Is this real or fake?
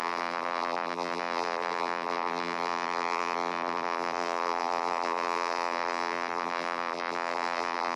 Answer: fake